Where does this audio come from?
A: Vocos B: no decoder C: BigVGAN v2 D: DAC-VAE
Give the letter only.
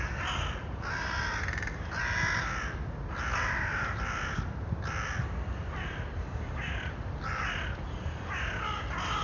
B